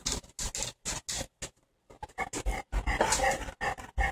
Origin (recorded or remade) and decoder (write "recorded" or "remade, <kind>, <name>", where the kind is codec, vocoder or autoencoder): recorded